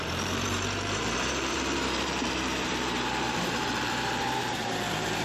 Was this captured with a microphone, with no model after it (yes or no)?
no